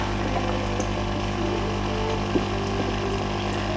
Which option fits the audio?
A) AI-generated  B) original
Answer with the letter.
B